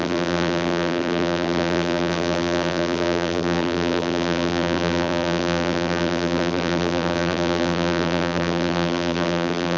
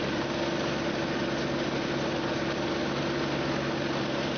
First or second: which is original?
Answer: second